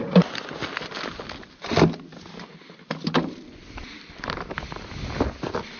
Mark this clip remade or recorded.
recorded